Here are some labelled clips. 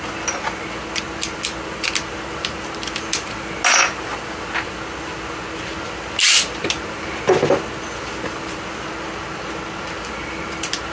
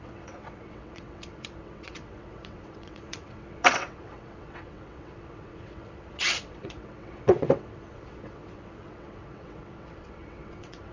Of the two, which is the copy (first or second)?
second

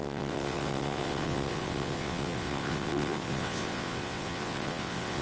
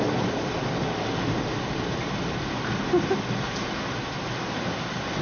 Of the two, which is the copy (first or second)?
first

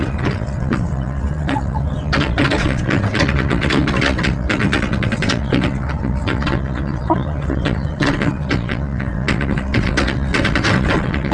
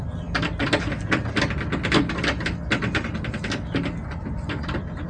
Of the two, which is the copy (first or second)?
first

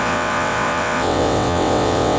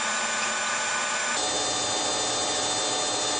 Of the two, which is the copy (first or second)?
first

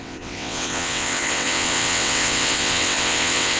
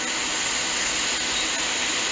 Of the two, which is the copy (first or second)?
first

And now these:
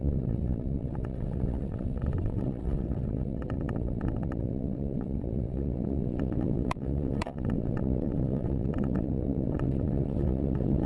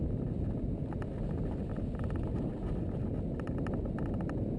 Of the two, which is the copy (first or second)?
first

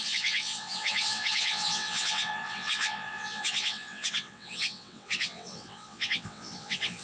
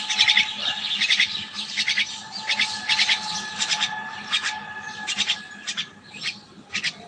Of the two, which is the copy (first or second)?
first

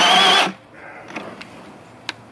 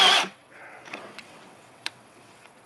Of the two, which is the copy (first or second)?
second